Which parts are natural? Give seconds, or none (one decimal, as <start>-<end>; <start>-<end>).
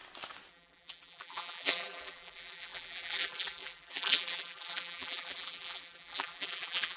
0.0-0.5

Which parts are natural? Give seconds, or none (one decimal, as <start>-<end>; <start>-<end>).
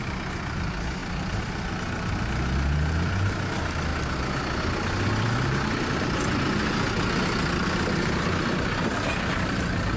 0.0-1.0; 1.7-10.0